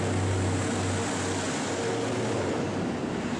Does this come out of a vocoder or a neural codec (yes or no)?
no